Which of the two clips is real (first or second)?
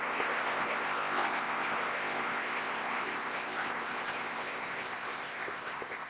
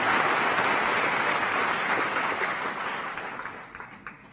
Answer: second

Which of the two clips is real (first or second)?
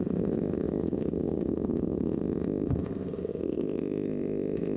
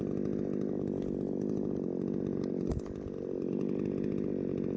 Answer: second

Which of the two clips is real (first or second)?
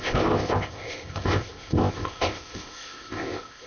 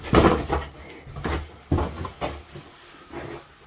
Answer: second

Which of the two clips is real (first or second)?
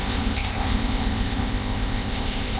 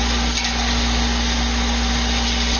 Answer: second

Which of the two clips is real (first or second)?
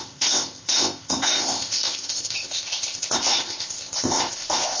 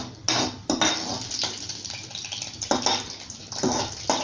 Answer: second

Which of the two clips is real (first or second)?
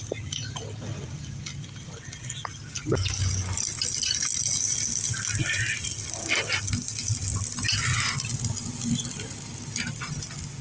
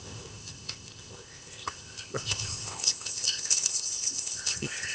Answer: first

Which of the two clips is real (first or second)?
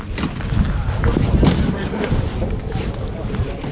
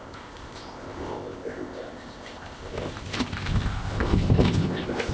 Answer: first